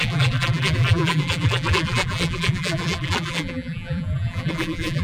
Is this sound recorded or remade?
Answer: remade